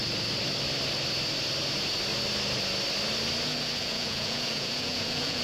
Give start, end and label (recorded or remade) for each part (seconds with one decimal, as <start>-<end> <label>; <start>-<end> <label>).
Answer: 0.0-3.5 recorded; 3.5-5.4 remade